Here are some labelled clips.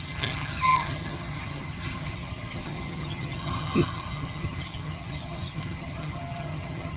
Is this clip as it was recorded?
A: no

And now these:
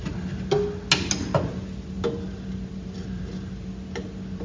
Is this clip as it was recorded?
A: yes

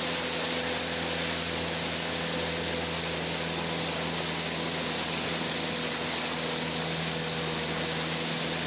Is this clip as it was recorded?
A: yes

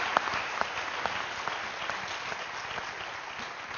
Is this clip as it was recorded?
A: yes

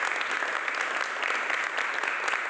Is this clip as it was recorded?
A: yes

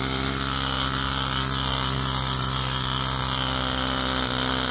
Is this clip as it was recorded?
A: yes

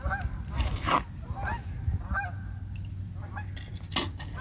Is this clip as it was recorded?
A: yes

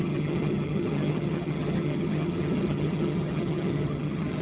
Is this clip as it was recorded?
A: no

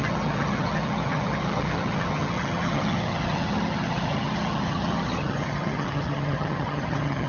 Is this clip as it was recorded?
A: no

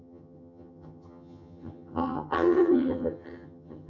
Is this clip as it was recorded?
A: no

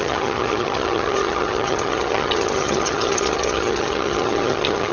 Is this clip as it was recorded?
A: no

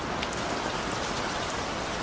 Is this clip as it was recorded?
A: yes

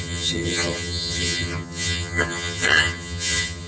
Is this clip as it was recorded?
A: no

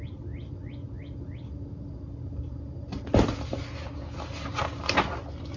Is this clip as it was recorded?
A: yes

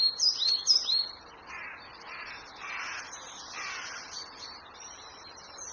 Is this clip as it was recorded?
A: yes